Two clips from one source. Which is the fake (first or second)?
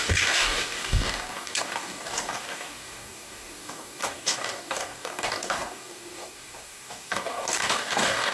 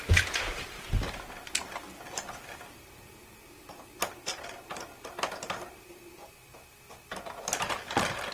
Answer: first